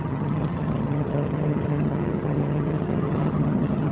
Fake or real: fake